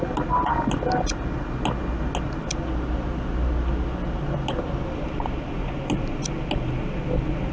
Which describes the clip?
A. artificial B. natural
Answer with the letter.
B